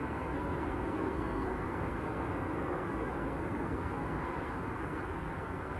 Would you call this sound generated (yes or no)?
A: yes